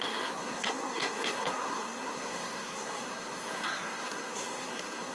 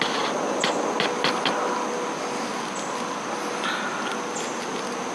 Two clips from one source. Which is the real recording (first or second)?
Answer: second